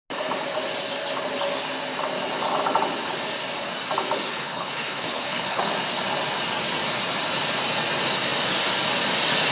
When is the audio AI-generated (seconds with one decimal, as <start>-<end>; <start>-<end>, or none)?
4.3-5.7